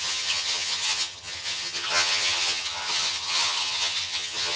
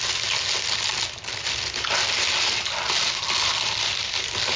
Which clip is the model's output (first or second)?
first